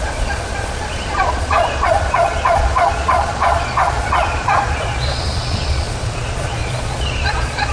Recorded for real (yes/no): no